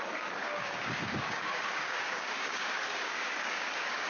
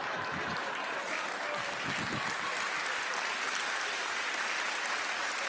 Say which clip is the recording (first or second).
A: second